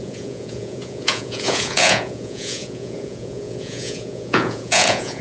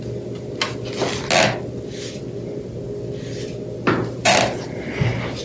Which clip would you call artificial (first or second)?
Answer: first